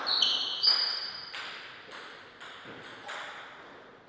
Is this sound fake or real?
real